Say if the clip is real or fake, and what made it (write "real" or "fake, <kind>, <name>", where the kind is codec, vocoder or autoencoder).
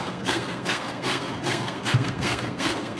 fake, codec, SNAC